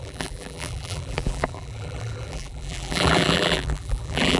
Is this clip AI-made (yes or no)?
yes